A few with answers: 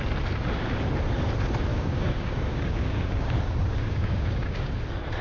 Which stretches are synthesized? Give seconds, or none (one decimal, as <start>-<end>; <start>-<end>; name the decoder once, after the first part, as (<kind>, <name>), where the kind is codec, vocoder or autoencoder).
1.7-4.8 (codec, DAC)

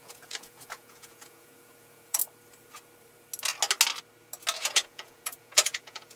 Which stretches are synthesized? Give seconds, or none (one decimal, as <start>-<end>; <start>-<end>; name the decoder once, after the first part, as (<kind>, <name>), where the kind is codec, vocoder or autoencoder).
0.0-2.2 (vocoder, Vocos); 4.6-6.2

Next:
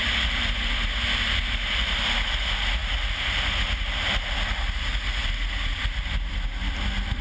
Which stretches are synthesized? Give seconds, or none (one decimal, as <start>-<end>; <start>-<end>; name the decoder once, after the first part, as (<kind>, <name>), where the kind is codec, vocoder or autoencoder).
none